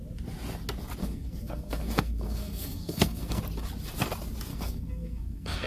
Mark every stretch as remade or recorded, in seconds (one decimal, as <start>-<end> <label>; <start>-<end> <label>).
0.0-1.0 recorded; 1.0-3.4 remade; 3.4-4.5 recorded; 4.5-5.7 remade